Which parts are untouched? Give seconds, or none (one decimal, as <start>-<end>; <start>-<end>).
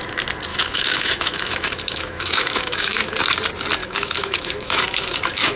0.0-0.5; 3.1-3.8